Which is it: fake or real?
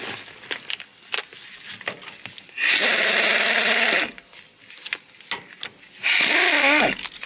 real